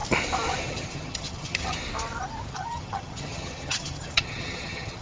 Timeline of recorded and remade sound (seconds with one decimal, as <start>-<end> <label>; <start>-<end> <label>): 0.0-0.6 recorded; 0.6-1.8 remade; 1.8-2.5 recorded; 2.5-5.0 remade